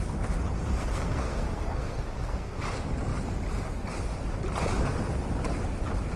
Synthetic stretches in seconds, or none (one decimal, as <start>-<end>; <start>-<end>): 0.7-2.6